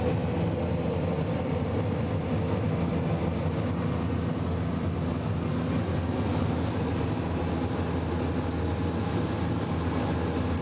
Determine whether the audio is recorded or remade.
recorded